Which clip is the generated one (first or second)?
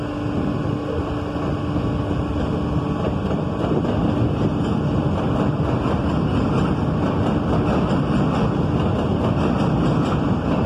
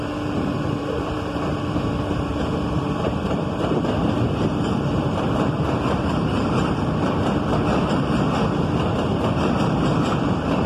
second